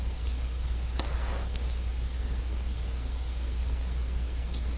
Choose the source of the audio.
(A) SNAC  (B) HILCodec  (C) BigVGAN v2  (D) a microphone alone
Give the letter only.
A